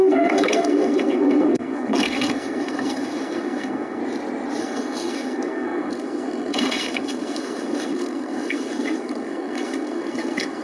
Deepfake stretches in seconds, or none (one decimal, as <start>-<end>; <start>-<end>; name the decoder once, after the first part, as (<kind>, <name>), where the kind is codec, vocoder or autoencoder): 0.0-4.0 (codec, SNAC); 4.6-10.6

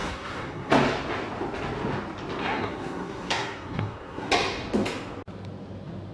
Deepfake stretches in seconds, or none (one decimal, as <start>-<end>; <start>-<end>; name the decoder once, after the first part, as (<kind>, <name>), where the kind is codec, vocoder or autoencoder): 0.0-0.7 (codec, SNAC); 2.4-4.3

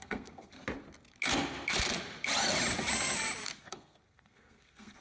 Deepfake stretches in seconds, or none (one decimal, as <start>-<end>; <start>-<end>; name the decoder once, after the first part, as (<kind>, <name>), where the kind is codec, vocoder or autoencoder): 0.0-0.6 (codec, SNAC); 3.6-5.0